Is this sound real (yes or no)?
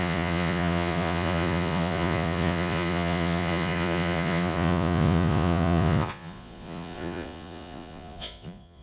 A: no